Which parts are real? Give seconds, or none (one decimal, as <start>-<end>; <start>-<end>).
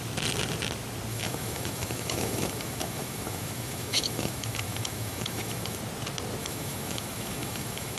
0.0-1.1; 5.8-6.4